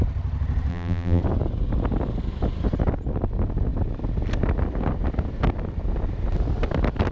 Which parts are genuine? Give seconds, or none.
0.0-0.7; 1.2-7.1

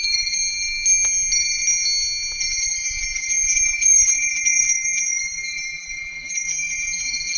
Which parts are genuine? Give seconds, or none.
0.4-2.4

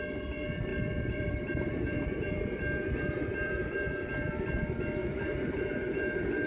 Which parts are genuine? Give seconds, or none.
0.0-0.7; 4.6-5.0